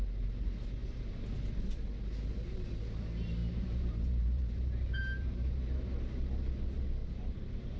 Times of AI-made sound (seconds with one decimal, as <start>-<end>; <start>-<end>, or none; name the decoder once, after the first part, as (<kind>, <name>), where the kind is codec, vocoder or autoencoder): 3.4-5.8 (vocoder, BigVGAN v2); 7.0-7.8